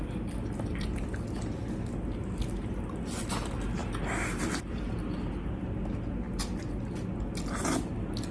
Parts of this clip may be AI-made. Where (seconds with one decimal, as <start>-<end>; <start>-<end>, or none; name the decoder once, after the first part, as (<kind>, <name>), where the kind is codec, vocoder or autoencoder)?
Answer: none